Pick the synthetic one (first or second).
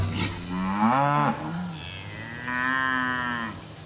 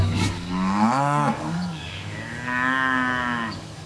second